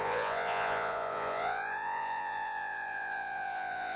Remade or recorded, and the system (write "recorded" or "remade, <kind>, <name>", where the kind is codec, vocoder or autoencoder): remade, vocoder, Vocos